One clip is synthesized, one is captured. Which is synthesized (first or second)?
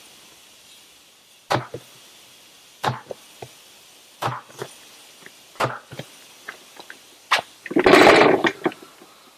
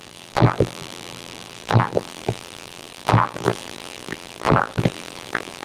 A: second